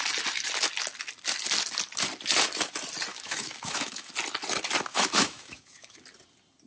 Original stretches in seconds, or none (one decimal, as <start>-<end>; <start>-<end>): 0.0-3.1; 4.1-4.9; 6.0-6.7